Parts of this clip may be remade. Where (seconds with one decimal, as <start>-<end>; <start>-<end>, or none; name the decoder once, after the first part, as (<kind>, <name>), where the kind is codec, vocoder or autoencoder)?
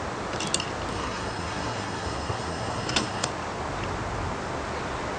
0.9-3.3 (codec, SNAC)